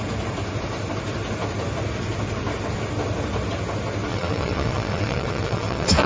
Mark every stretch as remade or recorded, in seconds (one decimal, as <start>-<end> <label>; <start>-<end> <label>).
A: 0.0-4.1 recorded; 4.1-6.1 remade